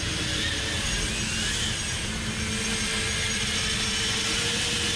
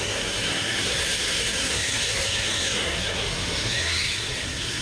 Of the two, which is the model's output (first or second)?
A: second